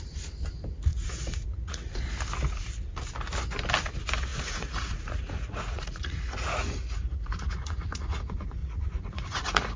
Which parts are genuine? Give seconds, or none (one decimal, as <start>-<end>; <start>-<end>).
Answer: 0.0-0.9; 2.0-4.3; 8.2-8.6

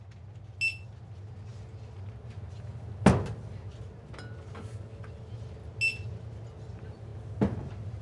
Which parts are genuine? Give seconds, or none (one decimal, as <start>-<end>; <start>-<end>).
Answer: 0.0-8.0

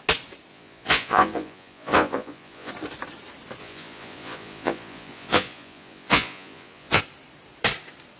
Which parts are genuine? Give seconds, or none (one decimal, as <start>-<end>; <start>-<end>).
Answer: 0.0-0.5; 2.7-3.6; 7.0-8.2

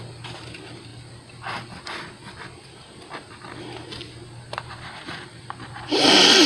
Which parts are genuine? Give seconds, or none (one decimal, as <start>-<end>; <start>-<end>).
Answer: 0.0-6.5

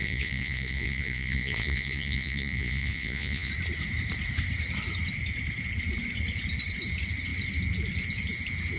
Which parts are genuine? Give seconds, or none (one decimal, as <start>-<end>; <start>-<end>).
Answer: 3.5-8.8

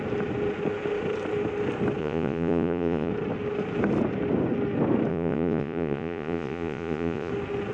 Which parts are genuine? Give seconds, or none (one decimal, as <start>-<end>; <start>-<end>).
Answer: 0.0-2.0; 3.1-5.1; 7.3-7.7

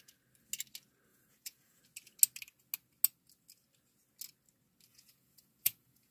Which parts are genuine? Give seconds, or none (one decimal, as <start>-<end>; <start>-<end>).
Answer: 0.0-1.1; 1.8-4.9

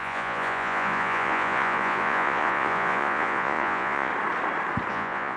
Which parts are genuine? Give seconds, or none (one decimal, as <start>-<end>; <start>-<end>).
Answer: 4.1-4.9